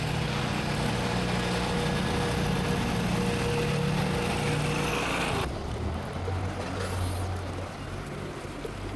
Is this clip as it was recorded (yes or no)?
yes